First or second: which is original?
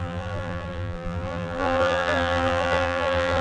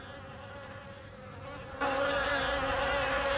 second